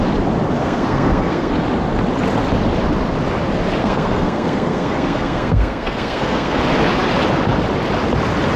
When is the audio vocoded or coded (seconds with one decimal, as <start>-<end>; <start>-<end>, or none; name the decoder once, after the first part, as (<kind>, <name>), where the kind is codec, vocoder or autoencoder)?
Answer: 0.6-1.5 (codec, SNAC); 3.8-6.6